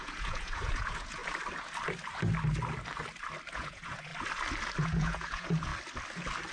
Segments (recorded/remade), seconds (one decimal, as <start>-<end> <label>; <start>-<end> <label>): 0.0-1.2 remade; 1.2-3.5 recorded; 3.5-4.1 remade; 4.1-4.8 recorded; 4.8-5.7 remade; 5.7-6.5 recorded